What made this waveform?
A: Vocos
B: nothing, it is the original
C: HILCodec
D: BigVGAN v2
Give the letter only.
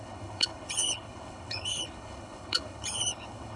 C